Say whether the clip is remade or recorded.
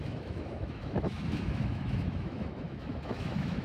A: remade